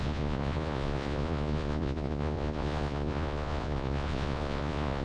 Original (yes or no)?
no